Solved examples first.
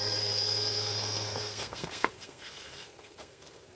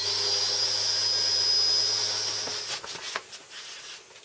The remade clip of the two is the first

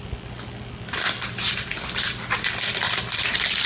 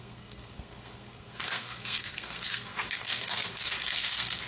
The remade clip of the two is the second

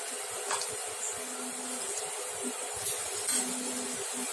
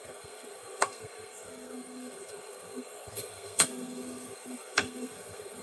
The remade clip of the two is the second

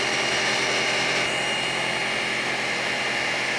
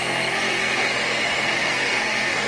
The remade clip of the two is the second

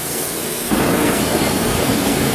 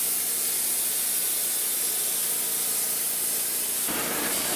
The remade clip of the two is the first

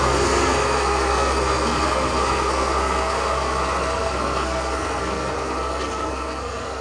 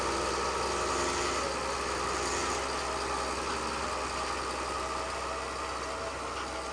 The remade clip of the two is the first